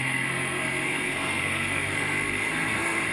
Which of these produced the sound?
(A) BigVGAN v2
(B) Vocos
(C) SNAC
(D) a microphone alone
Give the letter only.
C